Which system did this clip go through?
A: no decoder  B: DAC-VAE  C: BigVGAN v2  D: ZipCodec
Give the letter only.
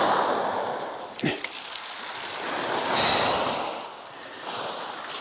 A